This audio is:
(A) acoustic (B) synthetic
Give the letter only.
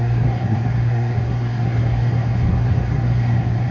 B